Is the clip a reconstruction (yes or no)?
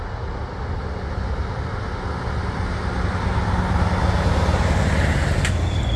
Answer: no